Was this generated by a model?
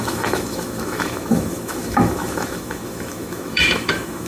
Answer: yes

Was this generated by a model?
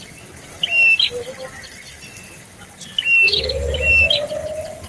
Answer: no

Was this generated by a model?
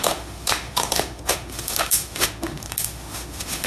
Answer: yes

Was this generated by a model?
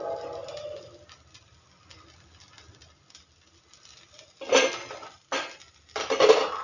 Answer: no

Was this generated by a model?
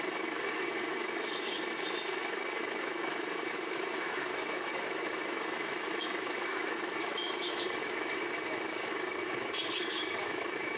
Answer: yes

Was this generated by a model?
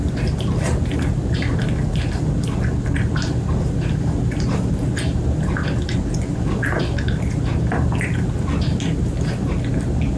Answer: no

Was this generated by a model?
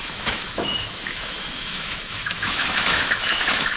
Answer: yes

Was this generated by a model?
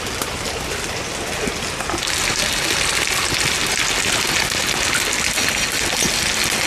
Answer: no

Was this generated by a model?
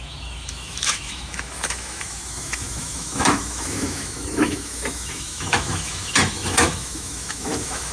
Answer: yes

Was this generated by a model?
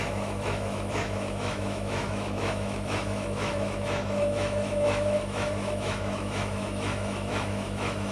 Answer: yes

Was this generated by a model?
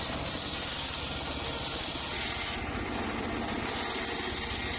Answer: no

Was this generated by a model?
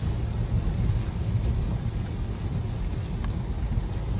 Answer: no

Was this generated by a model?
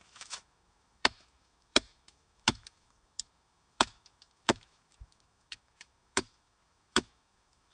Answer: yes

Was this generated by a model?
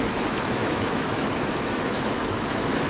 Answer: yes